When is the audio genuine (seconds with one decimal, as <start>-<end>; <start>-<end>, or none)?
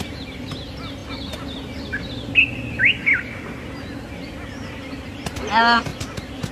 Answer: 0.0-6.5